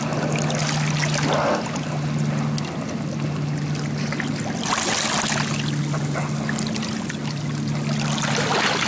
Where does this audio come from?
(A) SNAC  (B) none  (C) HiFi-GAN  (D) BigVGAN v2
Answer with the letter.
B